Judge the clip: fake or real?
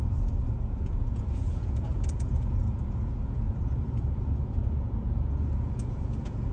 fake